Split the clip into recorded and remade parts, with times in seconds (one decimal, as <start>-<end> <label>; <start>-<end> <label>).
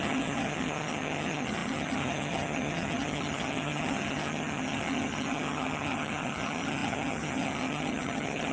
0.0-8.5 remade